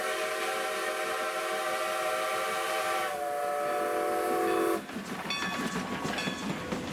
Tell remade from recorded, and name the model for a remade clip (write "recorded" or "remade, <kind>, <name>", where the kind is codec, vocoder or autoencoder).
recorded